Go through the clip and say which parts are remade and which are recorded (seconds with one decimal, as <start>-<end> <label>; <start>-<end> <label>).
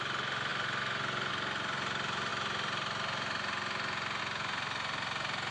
0.0-5.5 recorded